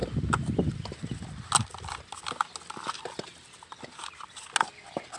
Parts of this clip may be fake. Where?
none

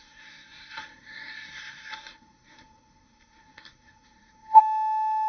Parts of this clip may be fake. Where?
0.0-4.6 (codec, SNAC)

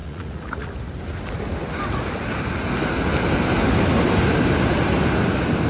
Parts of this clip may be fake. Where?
0.0-0.7 (vocoder, Vocos)

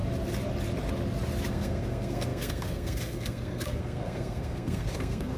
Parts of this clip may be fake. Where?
1.5-5.4 (codec, SNAC)